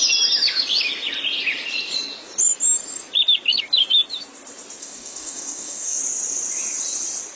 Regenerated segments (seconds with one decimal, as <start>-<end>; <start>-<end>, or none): 4.8-6.0